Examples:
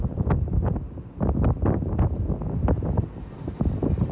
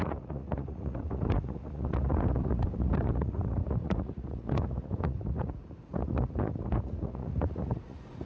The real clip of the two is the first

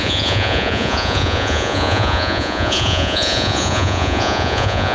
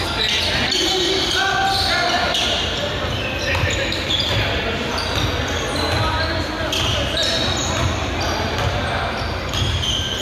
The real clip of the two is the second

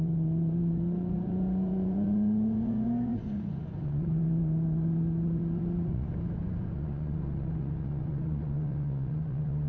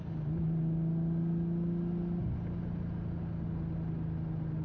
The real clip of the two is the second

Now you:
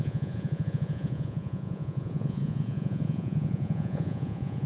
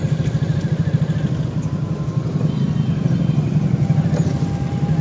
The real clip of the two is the second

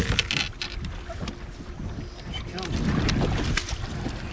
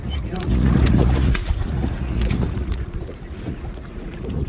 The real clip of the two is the first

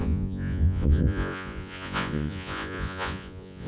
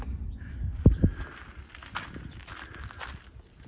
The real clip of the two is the second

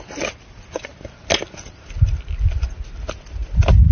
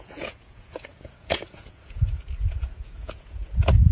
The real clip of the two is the first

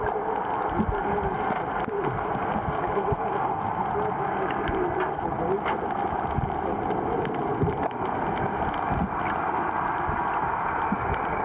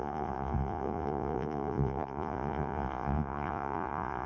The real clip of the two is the first